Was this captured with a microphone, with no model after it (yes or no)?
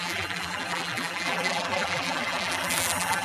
no